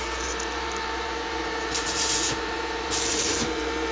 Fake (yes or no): yes